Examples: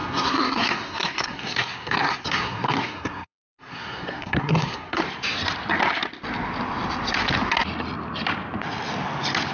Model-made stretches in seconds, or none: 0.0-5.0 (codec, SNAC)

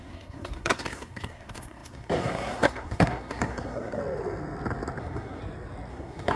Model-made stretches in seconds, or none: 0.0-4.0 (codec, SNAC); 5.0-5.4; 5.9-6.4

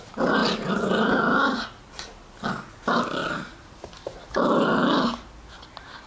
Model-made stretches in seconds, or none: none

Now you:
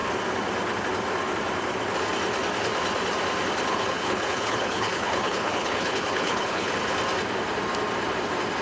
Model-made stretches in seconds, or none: 3.7-6.7 (codec, HILCodec)

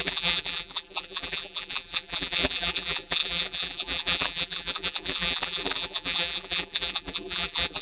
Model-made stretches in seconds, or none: 0.0-7.8 (vocoder, BigVGAN v2)